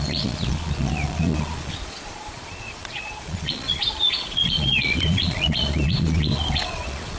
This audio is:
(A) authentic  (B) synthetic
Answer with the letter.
B